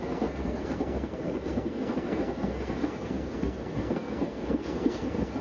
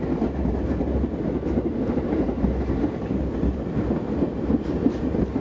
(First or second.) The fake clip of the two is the first